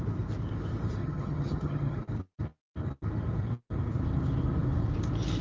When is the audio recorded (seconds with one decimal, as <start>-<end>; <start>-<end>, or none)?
0.0-1.0; 2.0-5.4